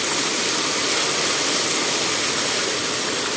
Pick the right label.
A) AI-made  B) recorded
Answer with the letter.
B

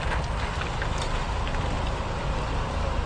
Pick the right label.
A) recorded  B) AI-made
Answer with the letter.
A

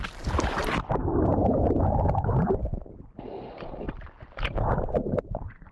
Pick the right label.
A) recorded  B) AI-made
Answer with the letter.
A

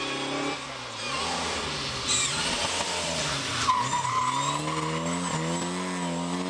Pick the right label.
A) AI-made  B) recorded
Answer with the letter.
B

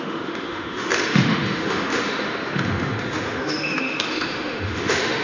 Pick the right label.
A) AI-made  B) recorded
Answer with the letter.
A